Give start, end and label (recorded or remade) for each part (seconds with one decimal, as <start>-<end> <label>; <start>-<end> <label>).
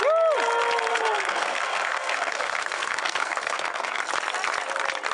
0.0-0.9 recorded; 0.9-4.0 remade; 4.0-5.1 recorded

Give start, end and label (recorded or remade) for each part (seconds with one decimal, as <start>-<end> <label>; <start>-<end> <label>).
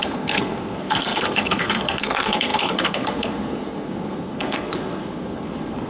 0.0-5.9 remade